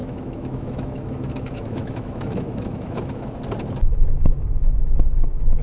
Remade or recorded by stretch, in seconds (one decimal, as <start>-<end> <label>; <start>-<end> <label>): 0.0-3.4 remade; 3.4-3.9 recorded; 3.9-5.6 remade